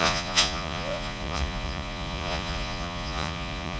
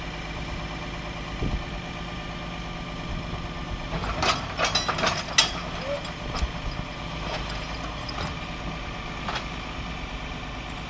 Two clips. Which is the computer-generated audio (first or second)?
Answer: first